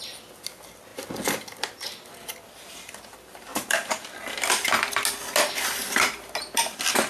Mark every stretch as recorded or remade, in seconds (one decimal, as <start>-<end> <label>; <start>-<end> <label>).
0.0-3.5 recorded; 3.5-4.1 remade; 4.1-7.1 recorded